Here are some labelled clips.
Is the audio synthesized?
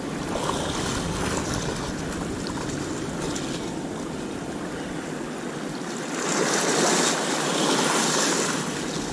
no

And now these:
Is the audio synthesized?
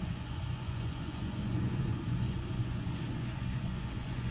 yes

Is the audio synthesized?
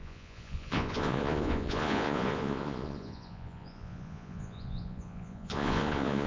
yes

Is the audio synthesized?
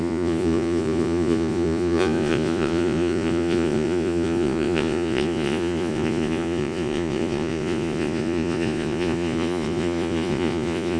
yes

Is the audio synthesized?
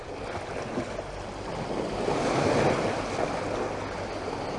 no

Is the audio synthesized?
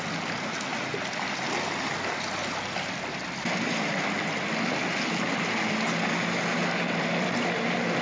no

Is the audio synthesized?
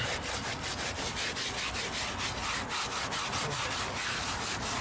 no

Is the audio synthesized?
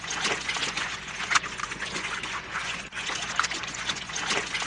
yes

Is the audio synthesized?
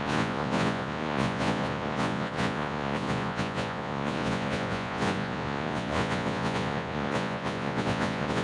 yes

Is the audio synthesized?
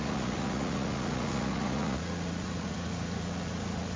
yes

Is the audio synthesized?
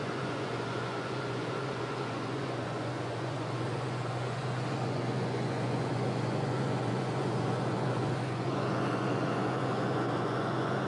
yes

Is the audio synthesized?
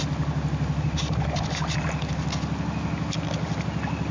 no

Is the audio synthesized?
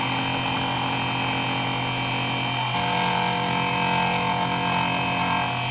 no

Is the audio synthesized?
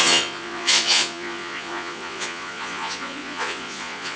yes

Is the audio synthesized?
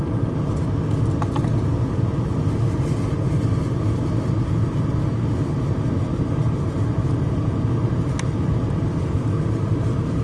no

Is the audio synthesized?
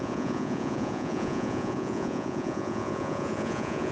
yes